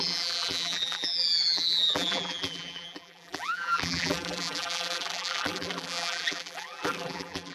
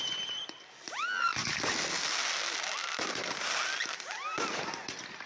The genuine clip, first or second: second